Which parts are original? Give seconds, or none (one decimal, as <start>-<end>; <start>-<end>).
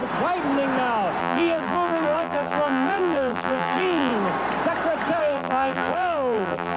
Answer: 0.0-1.2; 4.1-5.2